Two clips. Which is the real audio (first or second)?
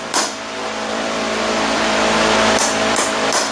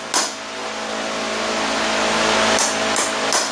second